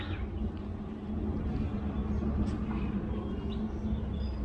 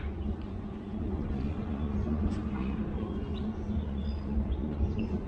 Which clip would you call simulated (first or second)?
second